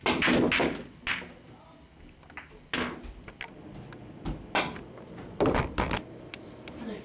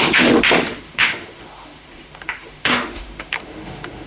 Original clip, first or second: first